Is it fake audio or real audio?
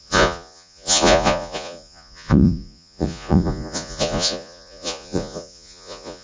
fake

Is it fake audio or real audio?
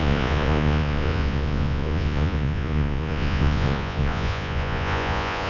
fake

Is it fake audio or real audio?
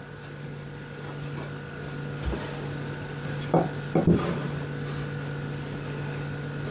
real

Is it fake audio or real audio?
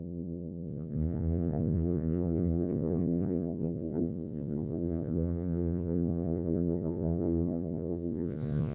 fake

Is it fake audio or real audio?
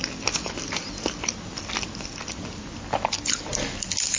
real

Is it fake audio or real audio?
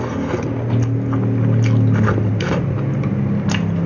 real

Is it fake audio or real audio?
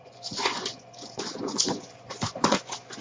fake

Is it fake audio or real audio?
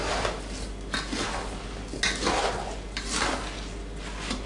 real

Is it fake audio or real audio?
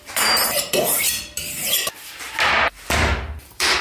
real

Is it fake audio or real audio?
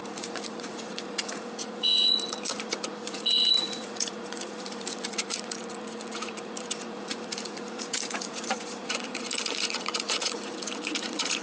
fake